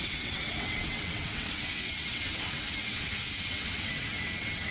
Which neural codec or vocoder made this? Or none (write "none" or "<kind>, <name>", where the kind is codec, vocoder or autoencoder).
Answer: vocoder, WaveNeXt